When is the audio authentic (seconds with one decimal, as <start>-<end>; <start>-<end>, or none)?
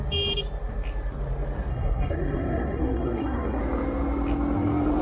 0.0-1.7; 3.6-5.0